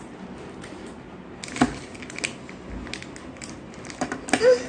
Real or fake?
real